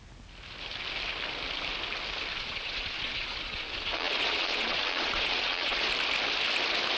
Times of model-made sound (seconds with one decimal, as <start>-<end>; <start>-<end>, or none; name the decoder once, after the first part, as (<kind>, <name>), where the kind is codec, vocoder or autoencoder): 2.3-5.9 (vocoder, Vocos)